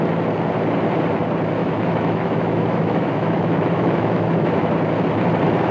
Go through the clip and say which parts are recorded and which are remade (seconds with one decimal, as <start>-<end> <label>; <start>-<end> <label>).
0.0-1.6 recorded; 1.6-4.7 remade; 4.7-5.7 recorded